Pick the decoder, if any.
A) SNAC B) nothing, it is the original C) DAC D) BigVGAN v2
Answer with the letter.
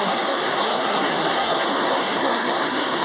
A